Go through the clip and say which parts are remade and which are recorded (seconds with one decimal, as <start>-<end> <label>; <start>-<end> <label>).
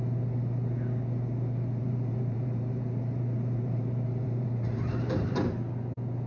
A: 0.0-1.8 recorded; 1.8-5.6 remade; 5.6-6.3 recorded